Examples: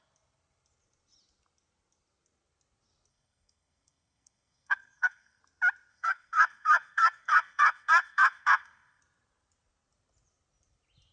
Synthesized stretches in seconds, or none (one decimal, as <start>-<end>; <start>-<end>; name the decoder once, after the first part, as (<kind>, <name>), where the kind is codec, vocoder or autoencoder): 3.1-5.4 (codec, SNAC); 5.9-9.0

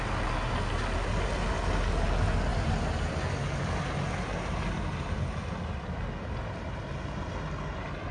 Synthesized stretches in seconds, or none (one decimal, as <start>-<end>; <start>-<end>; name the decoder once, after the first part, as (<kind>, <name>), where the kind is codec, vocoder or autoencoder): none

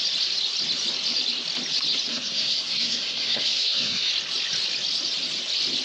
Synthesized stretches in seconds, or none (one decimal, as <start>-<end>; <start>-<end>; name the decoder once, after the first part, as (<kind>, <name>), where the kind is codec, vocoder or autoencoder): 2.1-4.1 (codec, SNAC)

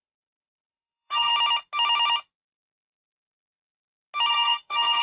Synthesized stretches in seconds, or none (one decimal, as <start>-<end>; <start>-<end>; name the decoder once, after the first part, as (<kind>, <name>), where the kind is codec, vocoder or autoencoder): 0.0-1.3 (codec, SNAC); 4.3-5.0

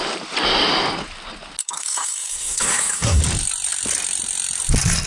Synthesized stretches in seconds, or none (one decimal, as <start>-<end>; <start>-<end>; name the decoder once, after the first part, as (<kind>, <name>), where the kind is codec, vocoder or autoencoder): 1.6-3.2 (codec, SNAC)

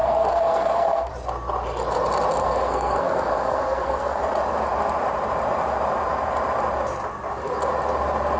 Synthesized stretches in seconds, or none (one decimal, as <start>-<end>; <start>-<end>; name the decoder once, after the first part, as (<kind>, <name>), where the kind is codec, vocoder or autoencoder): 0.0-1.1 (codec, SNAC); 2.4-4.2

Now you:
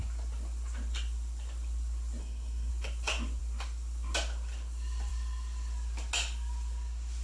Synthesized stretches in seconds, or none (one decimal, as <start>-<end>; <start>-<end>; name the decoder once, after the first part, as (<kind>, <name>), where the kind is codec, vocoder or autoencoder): 2.2-2.7 (codec, SNAC)

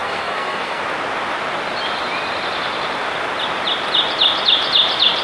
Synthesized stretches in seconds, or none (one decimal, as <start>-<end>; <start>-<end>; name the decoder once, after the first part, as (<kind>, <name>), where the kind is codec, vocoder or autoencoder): 0.0-0.8 (codec, SNAC)